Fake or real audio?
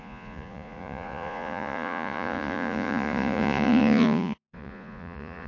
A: fake